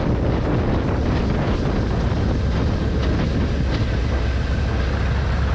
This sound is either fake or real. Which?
real